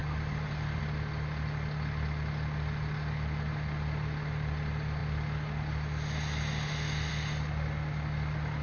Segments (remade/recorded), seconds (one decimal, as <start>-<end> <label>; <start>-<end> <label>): 0.0-0.8 remade; 0.8-8.6 recorded